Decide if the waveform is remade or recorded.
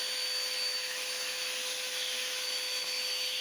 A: remade